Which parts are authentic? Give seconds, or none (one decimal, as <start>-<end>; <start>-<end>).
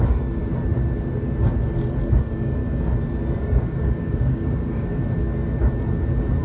0.4-2.2; 2.6-3.4; 5.0-6.4